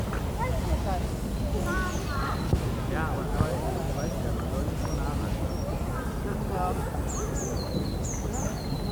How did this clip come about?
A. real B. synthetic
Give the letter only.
A